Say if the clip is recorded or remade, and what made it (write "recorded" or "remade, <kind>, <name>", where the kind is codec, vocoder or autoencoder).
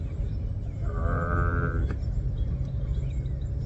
recorded